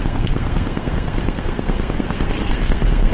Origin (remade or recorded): remade